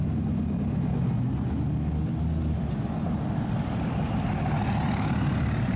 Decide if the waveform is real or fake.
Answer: real